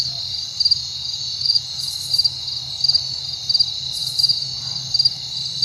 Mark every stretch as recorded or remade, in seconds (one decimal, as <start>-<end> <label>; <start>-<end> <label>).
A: 0.0-0.8 recorded; 0.8-1.9 remade; 1.9-4.0 recorded; 4.0-4.6 remade; 4.6-5.6 recorded